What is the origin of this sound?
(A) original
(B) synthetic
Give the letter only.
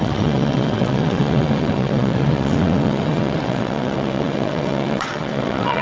B